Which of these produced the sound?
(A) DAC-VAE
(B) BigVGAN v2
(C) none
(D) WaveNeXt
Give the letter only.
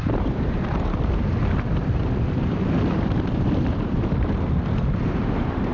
B